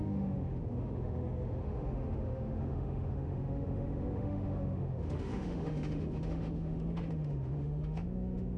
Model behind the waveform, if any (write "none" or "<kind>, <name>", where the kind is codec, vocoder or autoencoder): autoencoder, DAC-VAE